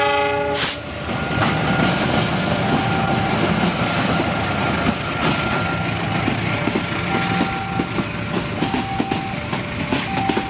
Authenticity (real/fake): real